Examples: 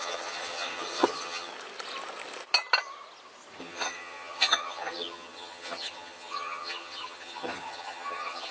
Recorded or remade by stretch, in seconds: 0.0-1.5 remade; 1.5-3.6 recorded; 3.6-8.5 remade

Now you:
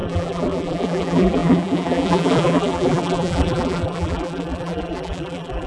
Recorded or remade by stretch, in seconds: 0.0-5.7 remade

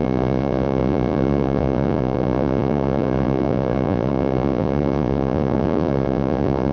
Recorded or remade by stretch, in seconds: 0.0-6.7 remade

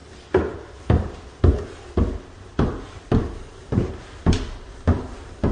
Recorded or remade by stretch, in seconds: 0.0-0.8 recorded; 0.8-5.5 remade